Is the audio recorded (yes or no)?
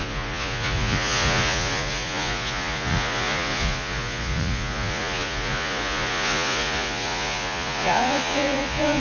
no